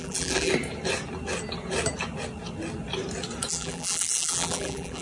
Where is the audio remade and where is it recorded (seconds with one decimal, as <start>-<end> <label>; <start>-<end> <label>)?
0.0-0.5 remade; 0.5-3.5 recorded; 3.5-5.0 remade